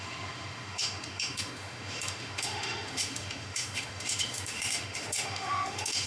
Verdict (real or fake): fake